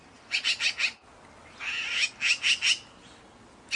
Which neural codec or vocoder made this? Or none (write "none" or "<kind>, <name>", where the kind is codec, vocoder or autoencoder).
none